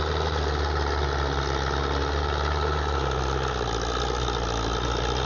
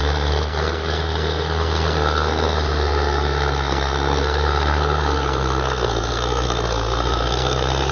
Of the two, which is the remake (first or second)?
second